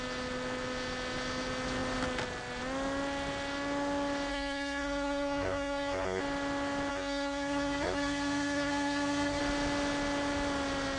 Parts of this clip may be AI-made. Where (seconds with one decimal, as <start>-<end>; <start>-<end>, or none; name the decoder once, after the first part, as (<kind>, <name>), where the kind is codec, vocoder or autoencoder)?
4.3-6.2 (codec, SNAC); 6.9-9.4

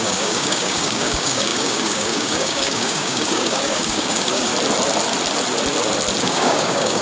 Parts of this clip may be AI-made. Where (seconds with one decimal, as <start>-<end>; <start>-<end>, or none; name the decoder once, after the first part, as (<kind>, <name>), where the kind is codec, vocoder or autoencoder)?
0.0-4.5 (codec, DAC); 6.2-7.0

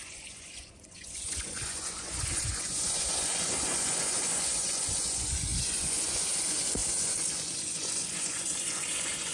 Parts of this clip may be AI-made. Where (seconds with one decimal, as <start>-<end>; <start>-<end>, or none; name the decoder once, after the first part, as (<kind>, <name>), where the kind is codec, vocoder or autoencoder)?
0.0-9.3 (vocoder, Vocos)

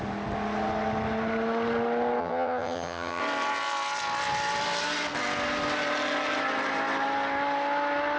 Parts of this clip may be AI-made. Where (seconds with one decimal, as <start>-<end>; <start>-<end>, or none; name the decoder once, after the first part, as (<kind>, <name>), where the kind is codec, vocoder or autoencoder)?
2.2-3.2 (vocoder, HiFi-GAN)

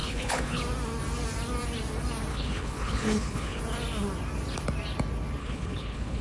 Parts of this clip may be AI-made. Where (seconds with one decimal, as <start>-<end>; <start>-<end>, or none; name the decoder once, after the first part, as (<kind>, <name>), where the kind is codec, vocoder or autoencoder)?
0.0-0.6 (codec, HILCodec); 2.3-3.6; 5.4-6.2

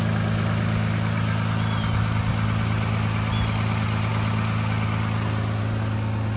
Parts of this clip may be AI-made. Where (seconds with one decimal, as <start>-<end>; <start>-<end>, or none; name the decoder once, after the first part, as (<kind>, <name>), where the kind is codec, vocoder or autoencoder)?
none

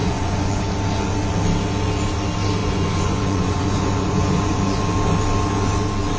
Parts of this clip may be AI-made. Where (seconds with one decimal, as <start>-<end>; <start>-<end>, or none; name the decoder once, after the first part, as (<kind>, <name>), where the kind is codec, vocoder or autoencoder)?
0.0-0.6 (vocoder, Vocos); 2.6-4.8

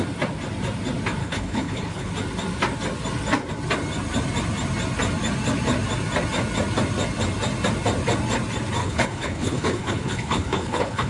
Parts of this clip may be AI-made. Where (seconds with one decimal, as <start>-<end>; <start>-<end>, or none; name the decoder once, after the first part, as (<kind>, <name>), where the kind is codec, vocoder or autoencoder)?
1.2-2.1 (codec, HILCodec); 8.8-11.1